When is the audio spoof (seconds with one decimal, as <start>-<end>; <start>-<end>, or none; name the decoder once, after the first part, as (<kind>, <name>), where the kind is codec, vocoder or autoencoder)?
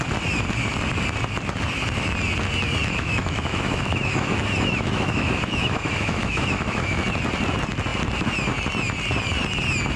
2.8-7.0 (autoencoder, DAC-VAE)